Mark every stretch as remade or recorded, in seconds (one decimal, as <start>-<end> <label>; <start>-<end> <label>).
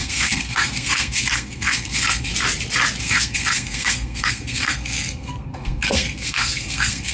0.0-2.3 remade; 2.3-3.0 recorded; 3.0-7.1 remade